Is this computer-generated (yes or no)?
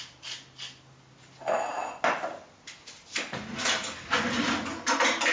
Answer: no